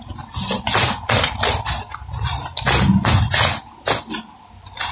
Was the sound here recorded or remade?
recorded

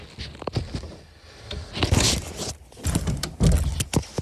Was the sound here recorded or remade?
recorded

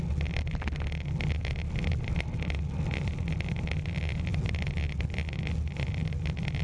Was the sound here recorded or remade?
recorded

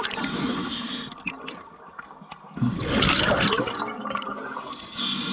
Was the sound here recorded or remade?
recorded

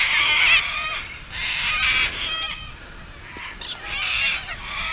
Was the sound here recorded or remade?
recorded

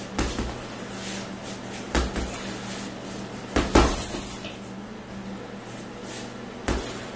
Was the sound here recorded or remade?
recorded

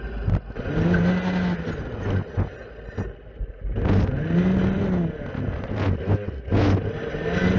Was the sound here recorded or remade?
recorded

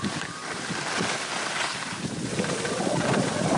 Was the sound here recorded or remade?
recorded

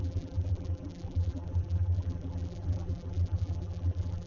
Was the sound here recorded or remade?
remade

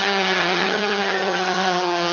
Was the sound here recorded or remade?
remade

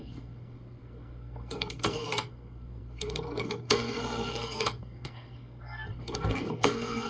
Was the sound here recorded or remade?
remade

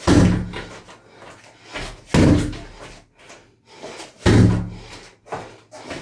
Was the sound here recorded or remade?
recorded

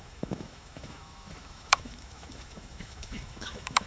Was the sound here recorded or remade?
remade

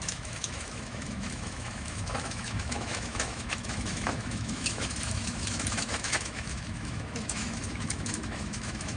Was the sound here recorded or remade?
remade